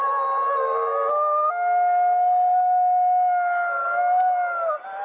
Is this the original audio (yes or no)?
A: yes